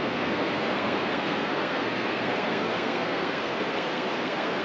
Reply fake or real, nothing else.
fake